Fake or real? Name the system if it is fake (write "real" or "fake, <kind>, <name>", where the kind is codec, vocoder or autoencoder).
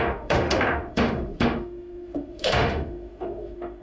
fake, autoencoder, DAC-VAE